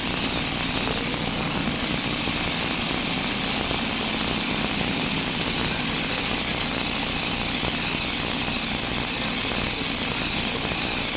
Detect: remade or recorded recorded